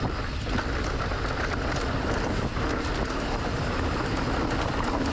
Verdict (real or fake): real